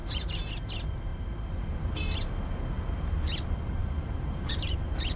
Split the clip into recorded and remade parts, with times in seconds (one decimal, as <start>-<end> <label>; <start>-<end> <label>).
0.0-0.5 remade; 0.5-3.8 recorded; 3.8-4.7 remade; 4.7-5.2 recorded